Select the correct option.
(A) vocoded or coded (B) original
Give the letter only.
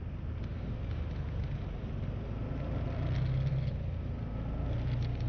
B